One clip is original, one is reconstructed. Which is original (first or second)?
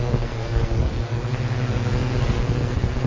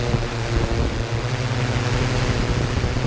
second